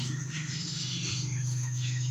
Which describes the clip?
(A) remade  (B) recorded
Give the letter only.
A